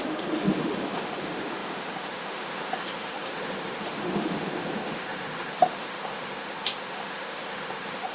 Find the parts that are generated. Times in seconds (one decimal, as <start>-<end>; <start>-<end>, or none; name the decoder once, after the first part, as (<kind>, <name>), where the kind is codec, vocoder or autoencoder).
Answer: 0.0-8.1 (autoencoder, DAC-VAE)